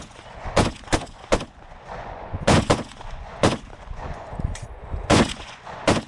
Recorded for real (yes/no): no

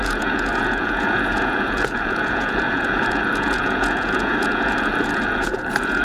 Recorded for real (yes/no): no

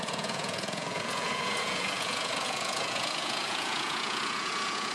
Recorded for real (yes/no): no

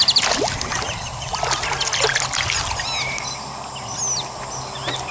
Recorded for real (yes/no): yes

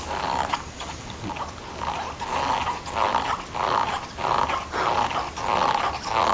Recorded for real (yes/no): yes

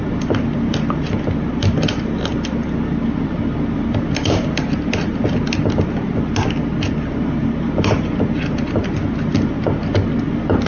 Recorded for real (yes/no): yes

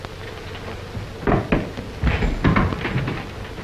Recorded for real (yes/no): yes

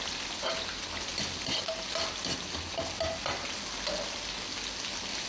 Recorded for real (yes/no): yes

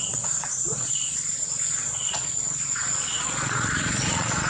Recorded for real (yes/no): no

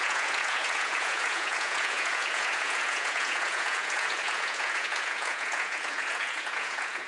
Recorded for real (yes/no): no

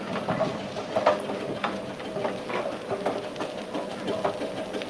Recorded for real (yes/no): yes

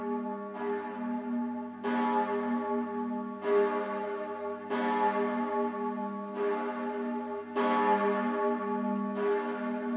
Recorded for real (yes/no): yes